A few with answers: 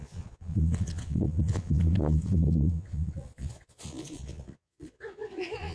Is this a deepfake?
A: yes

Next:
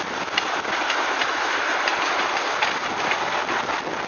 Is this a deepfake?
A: no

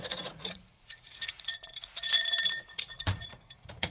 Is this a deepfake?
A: yes